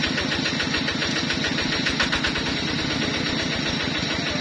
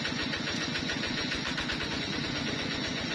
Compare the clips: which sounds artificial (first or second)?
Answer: second